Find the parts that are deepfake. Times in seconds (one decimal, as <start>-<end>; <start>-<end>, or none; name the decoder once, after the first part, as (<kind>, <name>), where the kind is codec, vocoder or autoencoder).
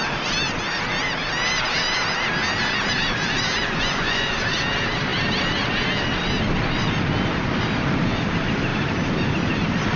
3.6-4.3 (vocoder, Vocos)